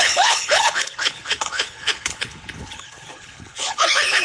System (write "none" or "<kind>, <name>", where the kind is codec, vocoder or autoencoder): codec, HILCodec